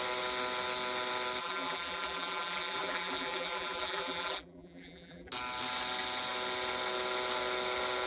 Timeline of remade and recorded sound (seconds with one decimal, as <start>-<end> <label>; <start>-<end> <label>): 0.0-1.4 recorded; 1.4-5.3 remade; 5.3-8.1 recorded